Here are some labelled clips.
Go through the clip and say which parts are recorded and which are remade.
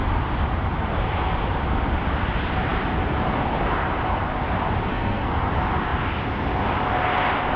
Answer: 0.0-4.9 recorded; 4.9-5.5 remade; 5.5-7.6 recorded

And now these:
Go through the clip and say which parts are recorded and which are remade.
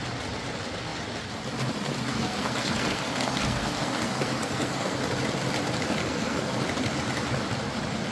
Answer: 0.0-2.1 recorded; 2.1-5.0 remade; 5.0-6.0 recorded; 6.0-6.6 remade; 6.6-8.1 recorded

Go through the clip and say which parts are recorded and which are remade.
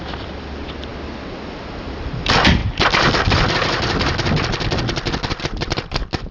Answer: 0.0-6.3 recorded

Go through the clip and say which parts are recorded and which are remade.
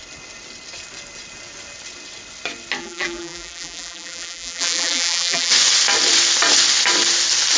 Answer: 0.0-2.8 recorded; 2.8-5.5 remade; 5.5-7.6 recorded